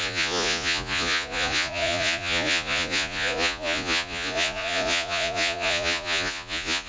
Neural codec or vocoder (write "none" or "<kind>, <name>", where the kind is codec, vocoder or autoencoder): vocoder, Vocos